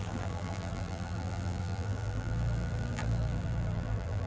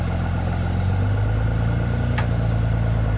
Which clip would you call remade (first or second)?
first